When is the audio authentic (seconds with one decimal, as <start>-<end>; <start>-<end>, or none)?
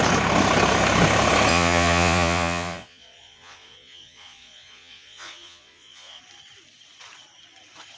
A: 0.0-1.5; 6.2-8.0